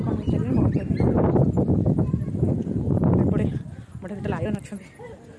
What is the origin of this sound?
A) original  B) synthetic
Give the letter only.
A